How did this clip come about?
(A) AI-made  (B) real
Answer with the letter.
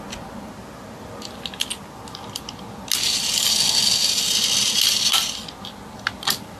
B